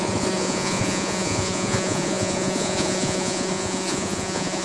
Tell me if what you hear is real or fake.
fake